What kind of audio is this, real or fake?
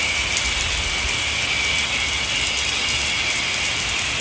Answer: real